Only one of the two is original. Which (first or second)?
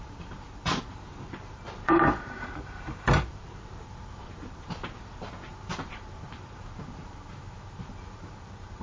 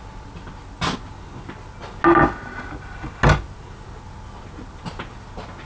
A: second